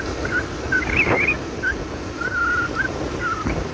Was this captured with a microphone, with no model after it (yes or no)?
yes